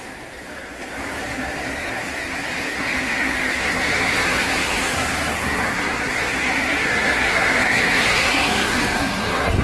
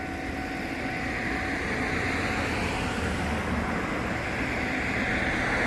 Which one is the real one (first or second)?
second